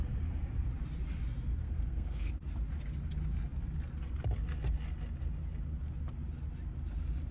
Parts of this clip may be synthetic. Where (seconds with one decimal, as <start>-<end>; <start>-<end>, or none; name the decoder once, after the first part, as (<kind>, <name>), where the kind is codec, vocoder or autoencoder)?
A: 1.6-2.3 (codec, SNAC)